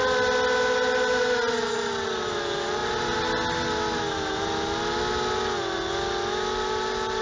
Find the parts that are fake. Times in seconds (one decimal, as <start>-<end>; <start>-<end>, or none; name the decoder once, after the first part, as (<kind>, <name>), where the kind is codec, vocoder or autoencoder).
none